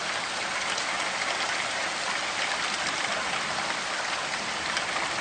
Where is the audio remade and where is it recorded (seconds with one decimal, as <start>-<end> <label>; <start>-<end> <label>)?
0.0-5.2 recorded